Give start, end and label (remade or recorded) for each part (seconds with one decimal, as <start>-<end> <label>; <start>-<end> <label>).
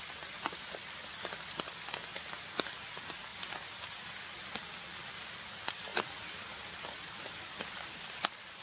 0.0-2.1 recorded; 2.1-2.9 remade; 2.9-5.9 recorded; 5.9-8.0 remade; 8.0-8.6 recorded